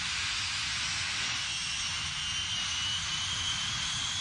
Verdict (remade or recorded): recorded